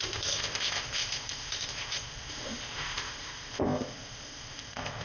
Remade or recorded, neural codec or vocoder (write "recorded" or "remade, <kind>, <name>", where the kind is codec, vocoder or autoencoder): remade, codec, ZipCodec